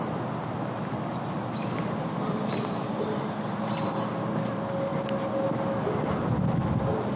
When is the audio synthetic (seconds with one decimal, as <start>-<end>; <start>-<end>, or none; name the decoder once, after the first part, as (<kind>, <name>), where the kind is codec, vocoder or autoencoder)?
none